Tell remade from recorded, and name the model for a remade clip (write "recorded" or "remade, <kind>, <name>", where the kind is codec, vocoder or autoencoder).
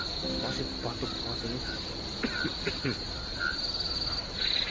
recorded